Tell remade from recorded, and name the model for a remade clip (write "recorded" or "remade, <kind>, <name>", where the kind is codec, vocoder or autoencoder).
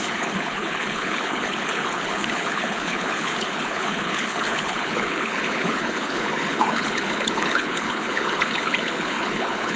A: remade, codec, HILCodec